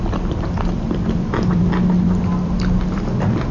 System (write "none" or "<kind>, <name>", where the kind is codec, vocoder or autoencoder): vocoder, BigVGAN v2